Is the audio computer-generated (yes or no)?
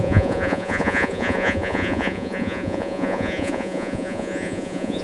yes